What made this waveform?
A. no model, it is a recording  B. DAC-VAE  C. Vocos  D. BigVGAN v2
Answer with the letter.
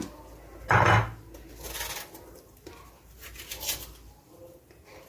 A